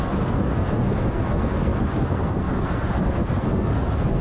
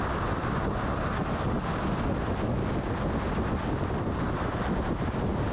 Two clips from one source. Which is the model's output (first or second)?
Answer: first